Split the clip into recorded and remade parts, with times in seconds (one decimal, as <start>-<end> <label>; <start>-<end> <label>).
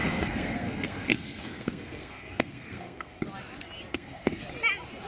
0.0-3.1 remade; 3.1-3.9 recorded; 3.9-4.4 remade; 4.4-5.1 recorded